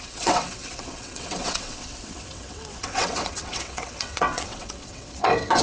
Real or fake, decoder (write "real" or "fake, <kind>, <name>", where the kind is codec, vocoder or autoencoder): fake, vocoder, WaveNeXt